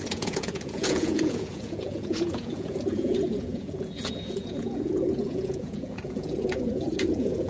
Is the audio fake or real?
fake